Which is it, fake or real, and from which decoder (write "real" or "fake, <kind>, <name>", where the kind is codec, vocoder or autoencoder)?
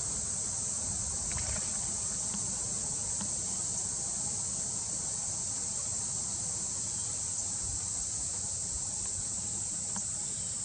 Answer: real